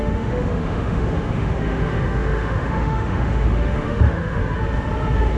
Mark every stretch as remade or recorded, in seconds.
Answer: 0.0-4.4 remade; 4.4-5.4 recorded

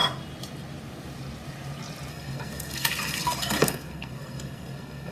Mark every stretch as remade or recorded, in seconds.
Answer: 0.0-2.1 recorded; 2.1-5.1 remade